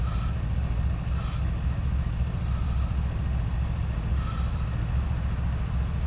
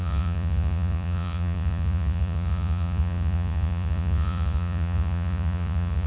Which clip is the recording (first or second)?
first